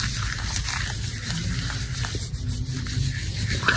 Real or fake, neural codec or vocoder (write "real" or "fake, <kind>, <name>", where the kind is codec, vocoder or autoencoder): real